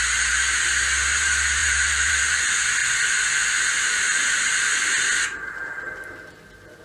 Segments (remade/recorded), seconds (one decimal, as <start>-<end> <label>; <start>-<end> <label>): 0.0-1.6 recorded; 1.6-2.2 remade; 2.2-6.8 recorded